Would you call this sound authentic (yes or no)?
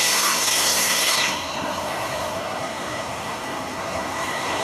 no